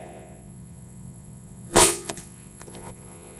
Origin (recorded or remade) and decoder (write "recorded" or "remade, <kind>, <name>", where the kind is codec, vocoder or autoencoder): remade, vocoder, Vocos